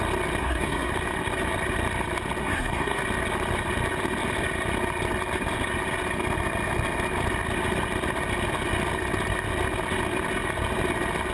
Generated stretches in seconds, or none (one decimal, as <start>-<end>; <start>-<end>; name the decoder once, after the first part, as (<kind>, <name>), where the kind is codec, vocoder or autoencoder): 0.4-0.9 (codec, SNAC); 2.4-3.0